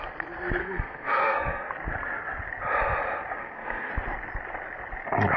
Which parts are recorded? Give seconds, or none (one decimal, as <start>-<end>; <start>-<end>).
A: 0.0-0.6; 1.7-3.4; 3.9-5.4